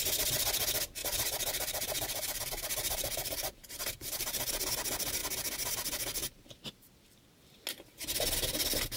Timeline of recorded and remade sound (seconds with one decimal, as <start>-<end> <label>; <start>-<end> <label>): 0.0-1.0 recorded; 1.0-4.7 remade; 4.7-9.0 recorded